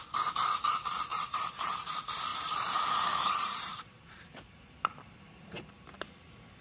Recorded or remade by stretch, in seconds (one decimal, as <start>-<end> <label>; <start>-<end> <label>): 0.0-1.1 recorded; 1.1-1.7 remade; 1.7-2.3 recorded; 2.3-6.1 remade; 6.1-6.6 recorded